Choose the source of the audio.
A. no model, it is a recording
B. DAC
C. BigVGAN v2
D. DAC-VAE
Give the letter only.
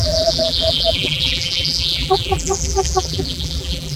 C